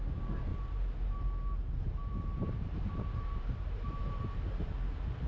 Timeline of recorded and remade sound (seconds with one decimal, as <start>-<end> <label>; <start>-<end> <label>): 0.0-0.5 recorded; 0.5-1.2 remade; 1.2-2.0 recorded; 2.0-5.3 remade